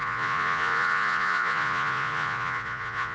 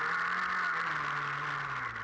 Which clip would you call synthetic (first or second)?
first